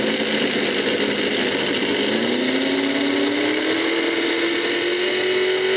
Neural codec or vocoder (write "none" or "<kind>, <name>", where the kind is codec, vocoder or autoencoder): none